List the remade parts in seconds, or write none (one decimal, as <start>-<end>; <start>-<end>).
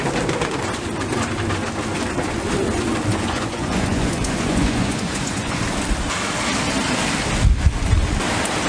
3.1-5.6